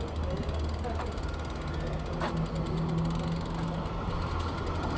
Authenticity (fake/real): real